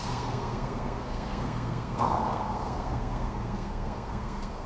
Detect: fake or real fake